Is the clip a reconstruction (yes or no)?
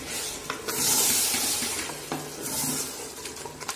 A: no